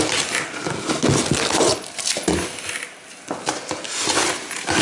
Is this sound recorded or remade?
recorded